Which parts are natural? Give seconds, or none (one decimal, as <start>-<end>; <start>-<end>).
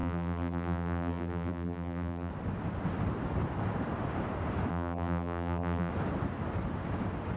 2.3-4.7; 5.9-7.4